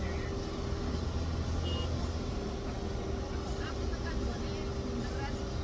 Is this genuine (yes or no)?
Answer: yes